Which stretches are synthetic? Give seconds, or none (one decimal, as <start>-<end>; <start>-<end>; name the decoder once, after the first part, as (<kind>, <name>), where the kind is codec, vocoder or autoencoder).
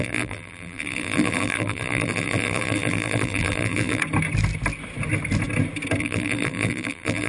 0.0-4.0 (vocoder, BigVGAN v2); 6.0-7.3